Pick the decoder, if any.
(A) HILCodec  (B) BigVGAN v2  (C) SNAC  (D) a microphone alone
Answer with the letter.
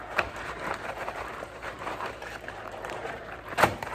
B